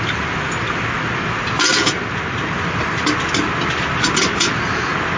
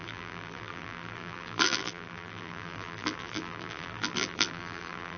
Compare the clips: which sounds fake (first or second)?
second